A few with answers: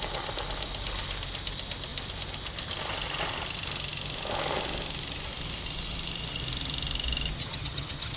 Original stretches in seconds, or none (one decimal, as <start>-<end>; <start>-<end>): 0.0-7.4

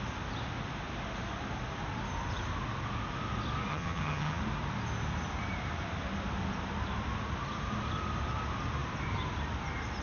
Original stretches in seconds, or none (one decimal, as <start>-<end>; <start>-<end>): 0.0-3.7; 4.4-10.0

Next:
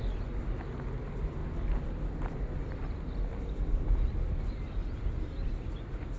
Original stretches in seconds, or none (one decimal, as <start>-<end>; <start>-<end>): 0.0-6.2

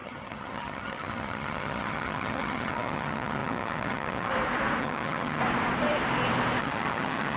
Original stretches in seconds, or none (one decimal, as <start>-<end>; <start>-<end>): 4.3-4.8; 5.4-6.6

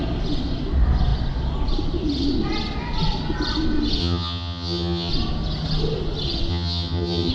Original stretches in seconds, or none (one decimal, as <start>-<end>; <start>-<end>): 0.0-4.0; 5.1-6.5

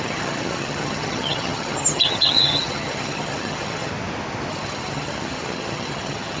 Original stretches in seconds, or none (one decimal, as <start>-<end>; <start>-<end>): 3.9-4.5

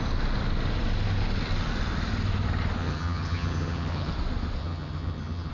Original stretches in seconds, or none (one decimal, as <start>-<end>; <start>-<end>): 0.0-2.8; 4.1-4.6